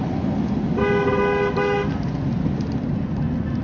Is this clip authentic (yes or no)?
yes